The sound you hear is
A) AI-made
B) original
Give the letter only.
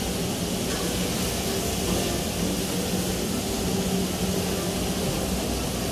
B